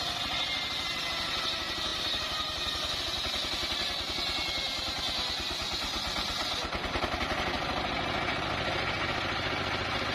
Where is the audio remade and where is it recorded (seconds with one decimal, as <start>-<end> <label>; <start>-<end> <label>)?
0.0-1.9 recorded; 1.9-3.0 remade; 3.0-10.1 recorded